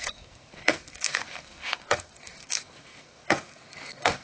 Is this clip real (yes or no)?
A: no